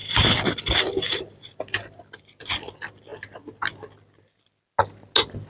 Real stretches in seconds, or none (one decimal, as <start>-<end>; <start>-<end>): 2.2-5.5